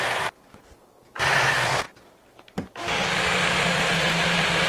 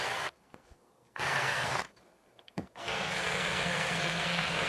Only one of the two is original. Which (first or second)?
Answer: first